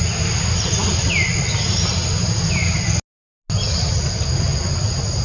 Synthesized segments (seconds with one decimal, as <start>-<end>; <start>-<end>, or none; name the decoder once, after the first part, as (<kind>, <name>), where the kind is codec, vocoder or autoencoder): none